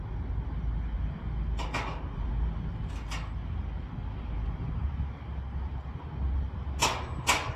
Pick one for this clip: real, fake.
real